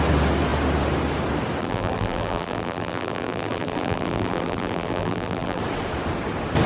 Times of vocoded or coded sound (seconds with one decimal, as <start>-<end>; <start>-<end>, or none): 1.6-5.6